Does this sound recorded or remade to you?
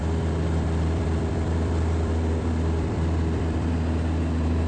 remade